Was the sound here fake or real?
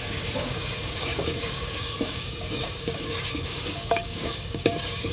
fake